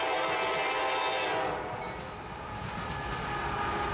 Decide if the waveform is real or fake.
real